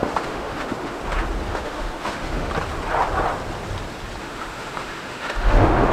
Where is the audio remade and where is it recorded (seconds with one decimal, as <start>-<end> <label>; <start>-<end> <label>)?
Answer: 0.0-1.0 remade; 1.0-1.5 recorded; 1.5-2.5 remade; 2.5-4.2 recorded; 4.2-5.9 remade